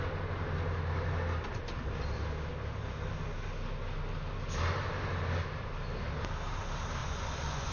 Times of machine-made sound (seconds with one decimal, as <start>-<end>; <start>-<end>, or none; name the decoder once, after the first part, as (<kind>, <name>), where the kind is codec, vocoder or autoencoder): 7.0-7.7 (vocoder, Vocos)